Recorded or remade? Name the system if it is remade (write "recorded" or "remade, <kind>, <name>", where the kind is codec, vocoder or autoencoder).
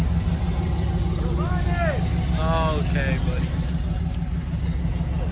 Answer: recorded